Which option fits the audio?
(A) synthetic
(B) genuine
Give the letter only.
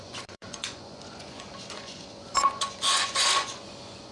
A